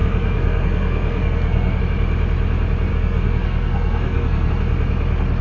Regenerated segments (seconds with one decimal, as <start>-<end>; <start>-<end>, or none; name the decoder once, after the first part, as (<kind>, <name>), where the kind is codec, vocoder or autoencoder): 0.0-1.8 (codec, SNAC); 2.9-4.5